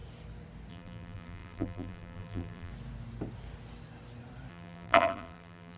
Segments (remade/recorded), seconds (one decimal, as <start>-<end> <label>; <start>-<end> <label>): 0.0-0.7 recorded; 0.7-2.7 remade; 2.7-4.5 recorded; 4.5-5.8 remade